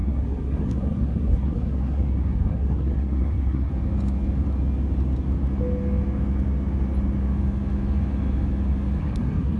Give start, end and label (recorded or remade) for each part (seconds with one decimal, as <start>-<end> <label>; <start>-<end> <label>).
0.0-3.7 remade; 3.7-9.0 recorded; 9.0-9.6 remade